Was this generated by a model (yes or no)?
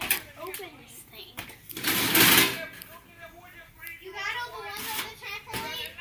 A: no